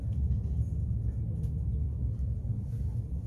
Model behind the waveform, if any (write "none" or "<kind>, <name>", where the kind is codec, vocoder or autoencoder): none